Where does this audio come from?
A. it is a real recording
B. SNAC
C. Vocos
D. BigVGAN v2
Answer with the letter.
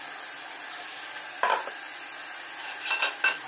A